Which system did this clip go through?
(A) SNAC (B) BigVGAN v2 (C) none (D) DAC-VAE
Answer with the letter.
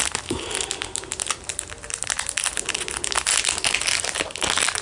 C